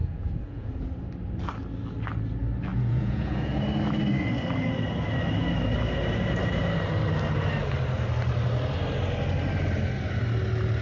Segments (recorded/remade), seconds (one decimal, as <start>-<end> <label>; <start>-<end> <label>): 0.0-0.7 remade; 0.7-2.7 recorded; 2.7-3.6 remade; 3.6-10.8 recorded